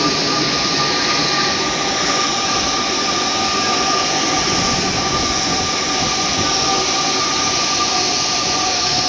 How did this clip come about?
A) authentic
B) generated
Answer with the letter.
B